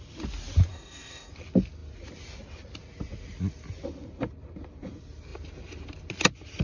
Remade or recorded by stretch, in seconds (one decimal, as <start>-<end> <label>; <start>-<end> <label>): 0.0-0.7 recorded; 0.7-1.3 remade; 1.3-6.6 recorded